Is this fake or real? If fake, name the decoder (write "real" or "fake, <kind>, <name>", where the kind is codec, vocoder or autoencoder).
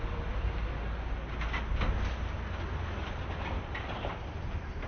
real